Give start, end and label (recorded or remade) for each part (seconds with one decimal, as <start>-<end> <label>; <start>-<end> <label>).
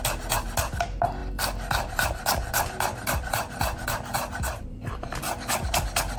0.0-1.2 recorded; 1.2-4.9 remade; 4.9-6.2 recorded